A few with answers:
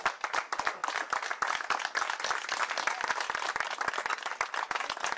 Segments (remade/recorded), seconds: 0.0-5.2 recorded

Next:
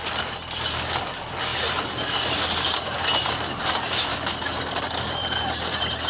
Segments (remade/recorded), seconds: 0.0-6.1 recorded